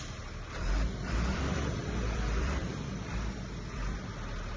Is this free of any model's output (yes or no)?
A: no